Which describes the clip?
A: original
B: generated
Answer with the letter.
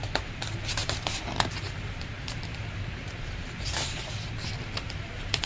B